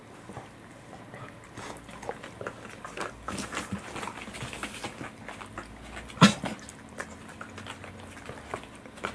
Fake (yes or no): no